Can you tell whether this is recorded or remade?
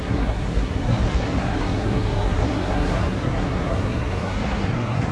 remade